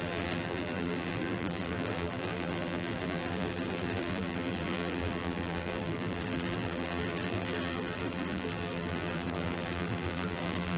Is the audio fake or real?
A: fake